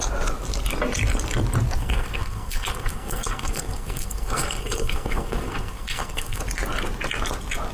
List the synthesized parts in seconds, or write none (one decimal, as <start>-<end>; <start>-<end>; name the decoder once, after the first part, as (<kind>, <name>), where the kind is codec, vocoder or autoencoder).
1.8-6.4 (codec, SNAC)